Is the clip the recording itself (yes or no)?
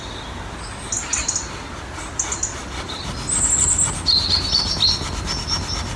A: yes